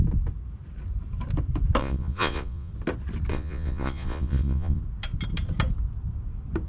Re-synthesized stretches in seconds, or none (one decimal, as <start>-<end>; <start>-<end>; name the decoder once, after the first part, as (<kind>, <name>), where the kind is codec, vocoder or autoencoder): 1.8-2.7 (vocoder, Vocos); 3.3-4.8